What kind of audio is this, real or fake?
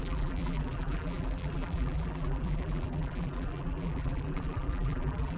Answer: fake